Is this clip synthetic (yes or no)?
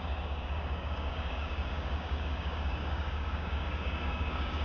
yes